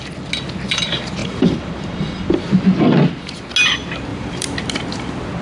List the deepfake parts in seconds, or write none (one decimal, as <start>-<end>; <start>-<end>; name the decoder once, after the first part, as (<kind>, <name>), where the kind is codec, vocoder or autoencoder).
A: 1.2-2.0 (vocoder, BigVGAN v2); 4.1-4.7